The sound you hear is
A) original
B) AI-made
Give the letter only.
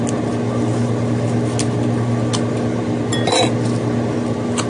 A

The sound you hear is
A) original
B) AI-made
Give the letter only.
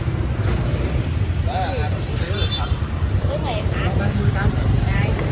B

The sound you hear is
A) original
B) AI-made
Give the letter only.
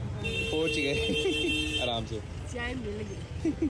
A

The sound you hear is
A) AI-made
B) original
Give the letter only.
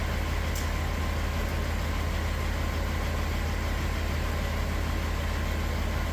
B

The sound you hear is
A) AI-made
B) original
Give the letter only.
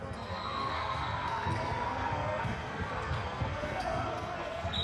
A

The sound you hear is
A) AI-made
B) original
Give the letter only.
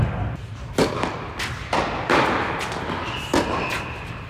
B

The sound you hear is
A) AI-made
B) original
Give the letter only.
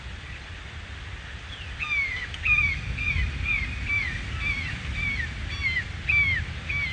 B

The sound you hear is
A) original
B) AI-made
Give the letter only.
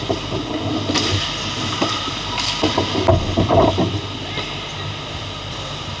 A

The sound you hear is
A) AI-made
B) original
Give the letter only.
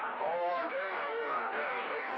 A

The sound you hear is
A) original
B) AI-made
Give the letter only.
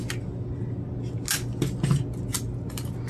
A